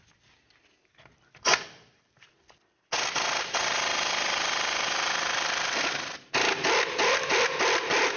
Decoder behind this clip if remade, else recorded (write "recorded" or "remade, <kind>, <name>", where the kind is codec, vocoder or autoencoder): recorded